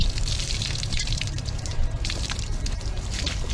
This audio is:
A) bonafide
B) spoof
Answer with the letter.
B